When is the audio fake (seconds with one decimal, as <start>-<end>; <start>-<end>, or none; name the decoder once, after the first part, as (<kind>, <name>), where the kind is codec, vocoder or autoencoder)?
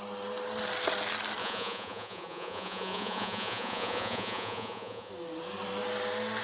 1.4-5.1 (vocoder, Vocos)